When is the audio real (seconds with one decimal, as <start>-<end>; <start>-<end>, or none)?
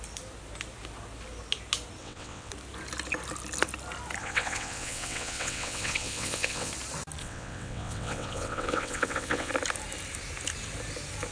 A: 0.0-2.0; 2.5-4.2; 6.7-7.2; 9.5-11.3